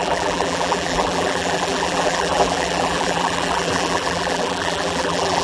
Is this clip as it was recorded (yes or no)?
no